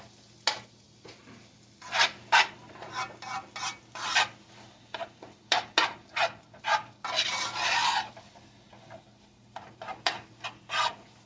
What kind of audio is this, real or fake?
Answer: real